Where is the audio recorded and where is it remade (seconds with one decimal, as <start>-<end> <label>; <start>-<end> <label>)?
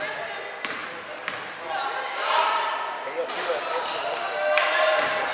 0.0-5.3 recorded